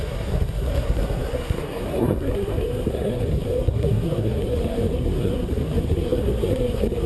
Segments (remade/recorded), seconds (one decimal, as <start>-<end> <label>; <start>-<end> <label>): 0.0-7.1 remade

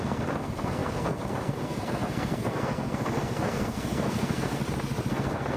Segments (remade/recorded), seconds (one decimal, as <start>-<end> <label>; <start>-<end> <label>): 0.0-4.6 remade; 4.6-5.1 recorded; 5.1-5.6 remade

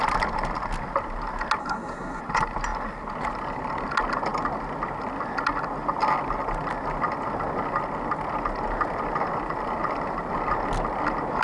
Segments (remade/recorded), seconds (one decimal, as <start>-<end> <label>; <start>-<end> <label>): 0.0-1.6 recorded; 1.6-2.2 remade; 2.2-11.4 recorded

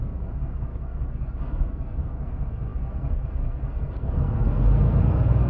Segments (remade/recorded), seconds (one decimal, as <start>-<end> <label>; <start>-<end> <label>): 0.0-5.5 remade

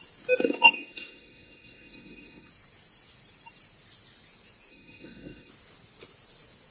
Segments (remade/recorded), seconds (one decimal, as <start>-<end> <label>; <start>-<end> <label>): 0.0-0.4 recorded; 0.4-2.5 remade; 2.5-4.7 recorded; 4.7-5.5 remade; 5.5-6.7 recorded

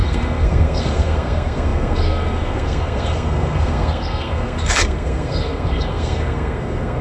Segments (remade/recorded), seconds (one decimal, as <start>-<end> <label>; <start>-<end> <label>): 0.0-7.0 remade

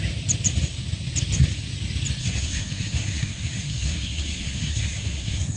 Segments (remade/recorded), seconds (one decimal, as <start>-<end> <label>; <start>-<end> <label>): 0.0-2.2 recorded; 2.2-5.6 remade

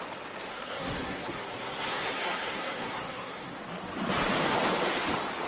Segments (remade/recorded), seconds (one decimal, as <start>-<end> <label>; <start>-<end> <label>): 0.0-0.5 recorded; 0.5-3.6 remade; 3.6-5.5 recorded